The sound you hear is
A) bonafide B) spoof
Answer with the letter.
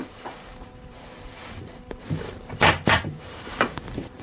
B